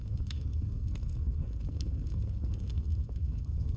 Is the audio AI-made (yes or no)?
yes